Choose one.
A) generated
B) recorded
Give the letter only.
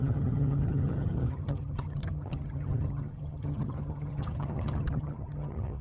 A